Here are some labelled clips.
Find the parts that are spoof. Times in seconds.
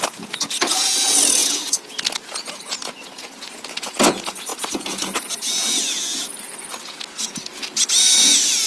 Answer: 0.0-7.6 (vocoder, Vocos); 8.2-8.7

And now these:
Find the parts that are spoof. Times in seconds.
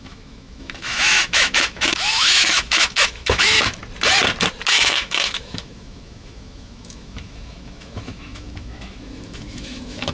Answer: 0.0-3.8 (autoencoder, DAC-VAE); 4.7-10.1